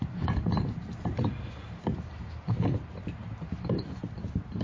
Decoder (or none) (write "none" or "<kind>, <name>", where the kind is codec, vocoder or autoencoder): vocoder, BigVGAN v2